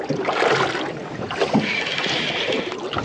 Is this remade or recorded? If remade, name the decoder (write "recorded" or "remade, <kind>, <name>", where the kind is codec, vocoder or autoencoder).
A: recorded